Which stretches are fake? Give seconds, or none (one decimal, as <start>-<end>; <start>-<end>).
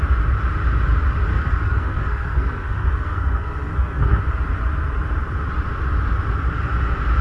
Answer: 1.3-4.2